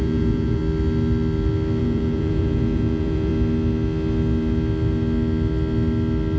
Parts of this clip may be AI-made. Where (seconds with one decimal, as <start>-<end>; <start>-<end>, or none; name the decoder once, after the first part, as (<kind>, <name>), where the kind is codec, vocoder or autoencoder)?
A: 0.0-0.6 (vocoder, Vocos); 1.8-3.3